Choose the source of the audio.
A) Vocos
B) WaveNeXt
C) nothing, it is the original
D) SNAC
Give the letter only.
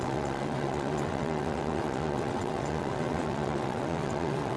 B